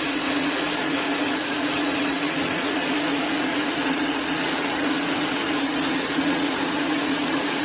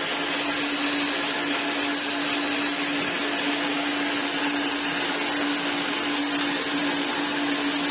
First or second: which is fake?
first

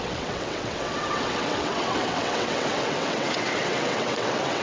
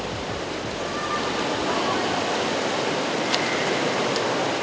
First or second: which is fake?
first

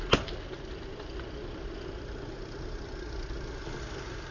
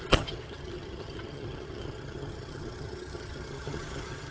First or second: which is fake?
second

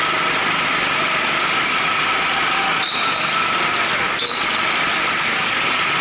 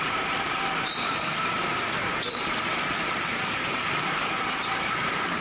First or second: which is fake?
second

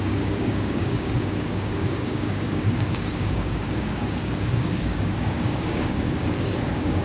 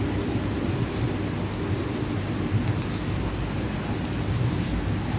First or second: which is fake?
first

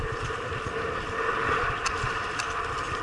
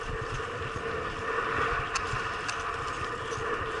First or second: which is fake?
first